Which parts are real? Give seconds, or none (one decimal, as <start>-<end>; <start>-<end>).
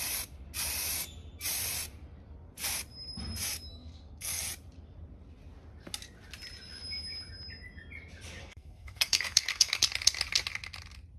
0.0-3.7; 4.4-8.4; 9.8-11.2